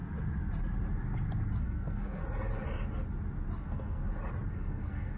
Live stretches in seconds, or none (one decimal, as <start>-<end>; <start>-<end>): 0.0-1.6; 2.2-3.6; 4.0-4.5